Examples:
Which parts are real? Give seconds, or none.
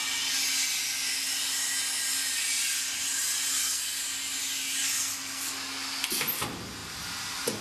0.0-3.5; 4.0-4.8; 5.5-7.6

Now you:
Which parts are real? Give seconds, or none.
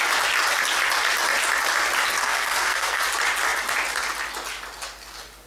0.0-2.2; 3.0-5.5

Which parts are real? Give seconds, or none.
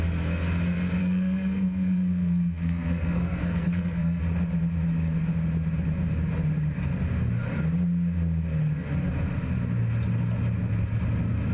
0.0-1.0; 4.2-11.5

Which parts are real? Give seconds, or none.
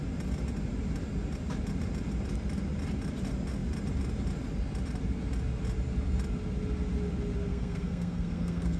0.0-7.5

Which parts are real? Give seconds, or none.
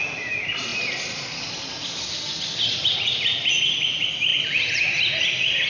0.0-5.7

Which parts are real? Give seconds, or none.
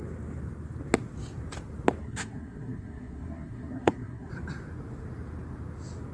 0.0-2.0; 4.3-6.1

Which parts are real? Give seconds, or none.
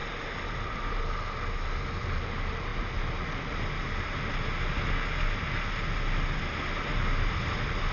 0.0-7.9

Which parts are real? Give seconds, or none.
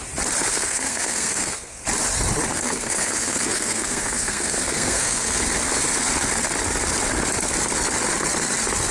0.0-0.5; 1.8-2.5; 5.4-8.9